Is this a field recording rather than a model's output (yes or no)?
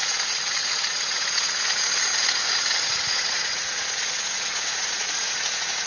no